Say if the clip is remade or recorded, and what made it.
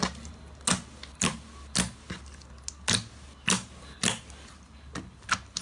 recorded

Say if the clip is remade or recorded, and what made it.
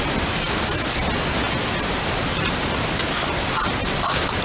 recorded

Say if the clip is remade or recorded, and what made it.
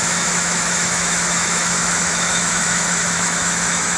remade, autoencoder, DAC-VAE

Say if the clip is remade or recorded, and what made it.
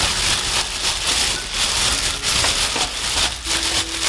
recorded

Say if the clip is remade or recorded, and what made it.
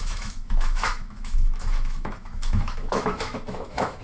remade, autoencoder, DAC-VAE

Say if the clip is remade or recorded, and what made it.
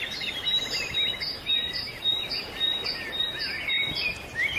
recorded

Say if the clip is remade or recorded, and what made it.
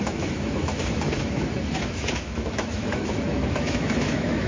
remade, autoencoder, DAC-VAE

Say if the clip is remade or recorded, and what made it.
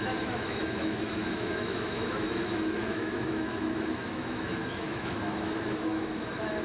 remade, autoencoder, DAC-VAE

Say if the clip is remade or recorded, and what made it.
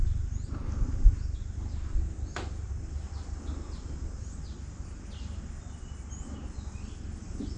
recorded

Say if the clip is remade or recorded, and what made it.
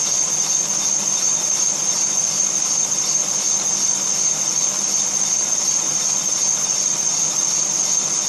recorded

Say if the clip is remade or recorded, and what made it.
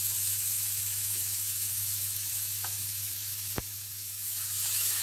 remade, autoencoder, DAC-VAE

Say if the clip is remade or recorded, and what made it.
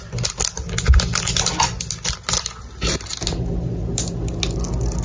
recorded